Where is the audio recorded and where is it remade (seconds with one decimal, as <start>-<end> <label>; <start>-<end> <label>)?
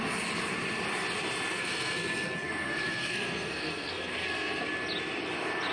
0.0-1.6 recorded; 1.6-4.6 remade; 4.6-5.7 recorded